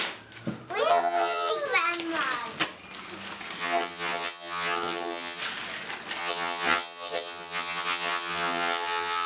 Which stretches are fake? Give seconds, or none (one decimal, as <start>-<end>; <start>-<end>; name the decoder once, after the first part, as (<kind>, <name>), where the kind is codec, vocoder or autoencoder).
0.9-1.5 (vocoder, HiFi-GAN); 3.6-5.4; 6.2-9.3